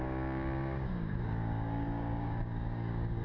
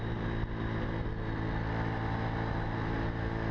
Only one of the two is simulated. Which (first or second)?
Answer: first